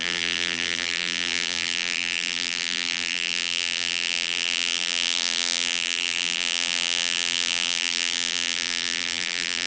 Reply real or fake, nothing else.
fake